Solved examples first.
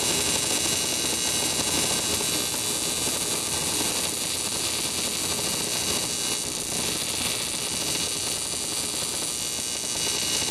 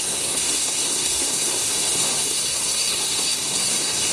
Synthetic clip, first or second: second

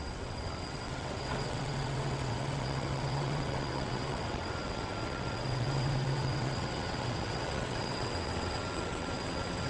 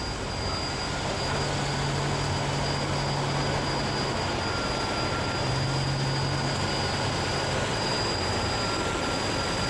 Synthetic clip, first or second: first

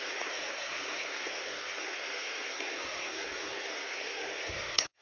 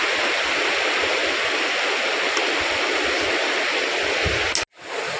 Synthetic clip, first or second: first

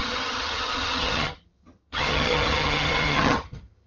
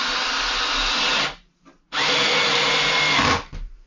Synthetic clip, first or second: first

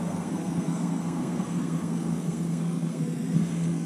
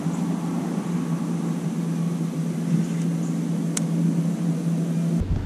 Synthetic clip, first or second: first